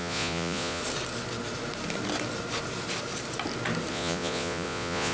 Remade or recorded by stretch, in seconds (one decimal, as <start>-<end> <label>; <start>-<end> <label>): 0.0-0.8 remade; 0.8-3.9 recorded; 3.9-5.1 remade